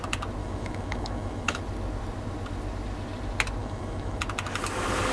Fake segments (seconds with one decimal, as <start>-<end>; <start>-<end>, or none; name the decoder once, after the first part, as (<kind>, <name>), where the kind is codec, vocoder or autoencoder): 0.4-1.6 (autoencoder, DAC-VAE); 3.6-4.2